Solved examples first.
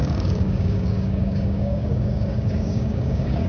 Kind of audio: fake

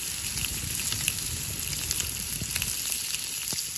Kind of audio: real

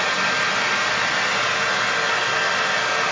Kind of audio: real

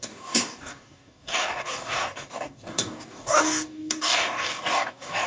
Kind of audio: fake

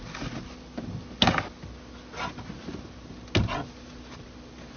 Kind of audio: real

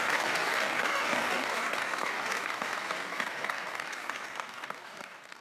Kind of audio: fake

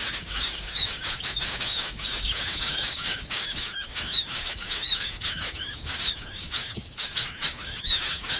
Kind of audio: fake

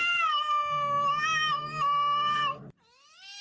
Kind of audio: real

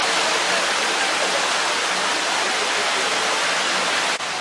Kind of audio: real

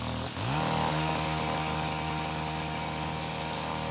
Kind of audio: fake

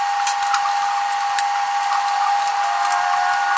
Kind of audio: real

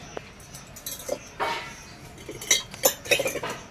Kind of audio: real